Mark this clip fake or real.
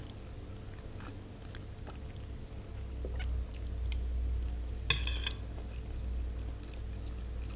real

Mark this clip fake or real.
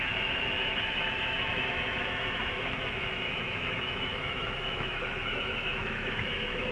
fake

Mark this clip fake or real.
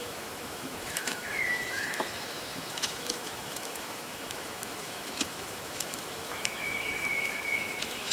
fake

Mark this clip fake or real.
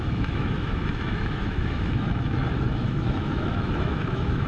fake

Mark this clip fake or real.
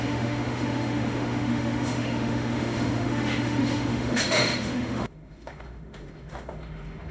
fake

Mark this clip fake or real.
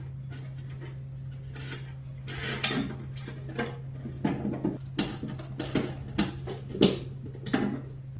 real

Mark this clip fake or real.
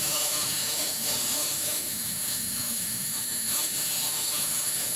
fake